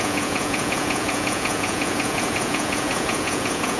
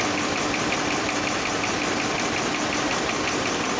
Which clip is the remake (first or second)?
first